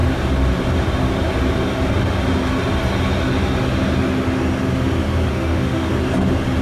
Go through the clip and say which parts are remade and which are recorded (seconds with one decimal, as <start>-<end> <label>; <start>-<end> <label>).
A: 0.0-5.3 recorded; 5.3-5.9 remade; 5.9-6.6 recorded